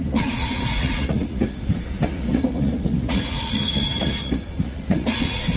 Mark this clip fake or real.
fake